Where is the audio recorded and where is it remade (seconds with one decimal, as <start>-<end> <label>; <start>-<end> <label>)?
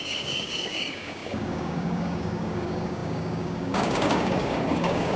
0.0-5.2 remade